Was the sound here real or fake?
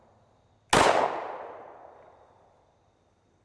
real